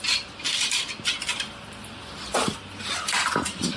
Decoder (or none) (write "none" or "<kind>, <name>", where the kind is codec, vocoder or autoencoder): none